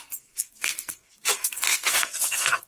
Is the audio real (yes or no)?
no